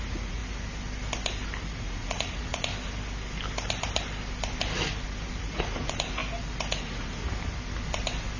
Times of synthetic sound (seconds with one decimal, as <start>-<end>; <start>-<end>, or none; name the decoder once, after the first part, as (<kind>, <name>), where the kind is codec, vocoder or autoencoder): 0.0-0.4 (vocoder, Vocos); 1.6-2.7; 5.4-6.2; 6.8-7.2